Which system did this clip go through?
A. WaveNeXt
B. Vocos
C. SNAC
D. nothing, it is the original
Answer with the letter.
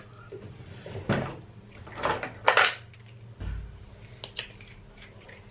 D